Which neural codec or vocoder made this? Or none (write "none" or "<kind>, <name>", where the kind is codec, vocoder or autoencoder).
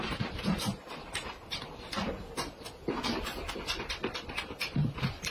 vocoder, BigVGAN v2